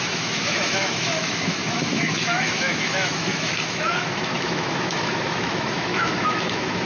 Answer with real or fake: fake